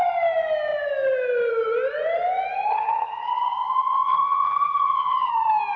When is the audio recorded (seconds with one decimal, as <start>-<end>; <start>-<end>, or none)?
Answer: 0.0-2.7; 5.3-5.8